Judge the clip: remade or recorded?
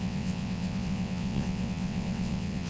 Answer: remade